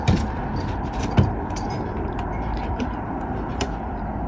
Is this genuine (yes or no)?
no